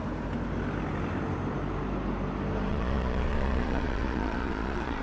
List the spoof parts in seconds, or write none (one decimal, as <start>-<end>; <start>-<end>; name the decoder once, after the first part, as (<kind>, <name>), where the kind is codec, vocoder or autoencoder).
2.7-5.0 (vocoder, Vocos)